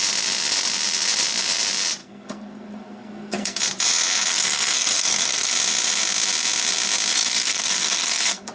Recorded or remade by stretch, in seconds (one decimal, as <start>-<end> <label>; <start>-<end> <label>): 0.0-2.0 recorded; 2.0-3.6 remade; 3.6-4.3 recorded; 4.3-5.5 remade; 5.5-7.1 recorded; 7.1-8.5 remade